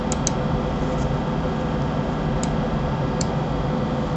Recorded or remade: recorded